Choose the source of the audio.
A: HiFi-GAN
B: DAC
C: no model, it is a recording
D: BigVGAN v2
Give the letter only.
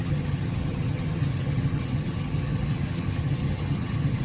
A